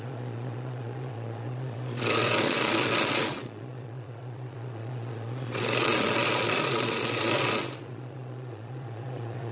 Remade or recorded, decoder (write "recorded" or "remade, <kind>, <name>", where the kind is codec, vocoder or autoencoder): remade, vocoder, Vocos